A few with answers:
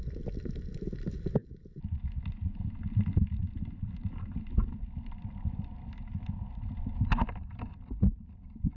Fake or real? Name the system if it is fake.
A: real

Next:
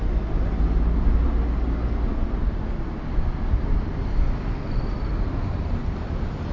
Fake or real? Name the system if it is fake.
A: real